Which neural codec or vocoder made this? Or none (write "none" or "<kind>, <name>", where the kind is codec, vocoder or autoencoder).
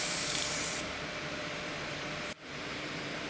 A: vocoder, BigVGAN v2